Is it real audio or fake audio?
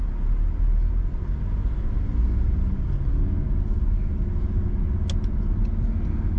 real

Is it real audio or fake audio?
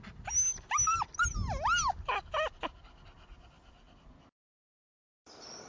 real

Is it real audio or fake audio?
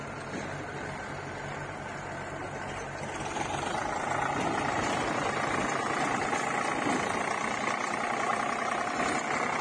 real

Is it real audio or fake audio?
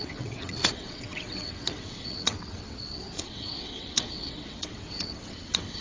fake